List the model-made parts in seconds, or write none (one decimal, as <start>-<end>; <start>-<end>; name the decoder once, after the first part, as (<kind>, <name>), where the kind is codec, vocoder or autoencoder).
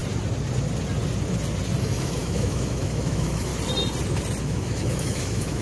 1.8-3.5 (autoencoder, DAC-VAE); 4.4-5.6